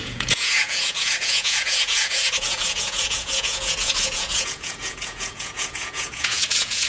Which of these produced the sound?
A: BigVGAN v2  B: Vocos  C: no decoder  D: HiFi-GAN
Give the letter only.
B